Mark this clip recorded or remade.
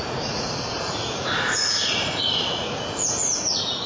remade